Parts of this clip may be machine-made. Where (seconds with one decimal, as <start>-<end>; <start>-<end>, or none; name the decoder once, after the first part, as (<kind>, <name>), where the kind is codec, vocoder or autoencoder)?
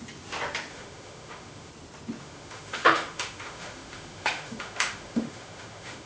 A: 0.7-1.7 (autoencoder, DAC-VAE); 2.2-6.1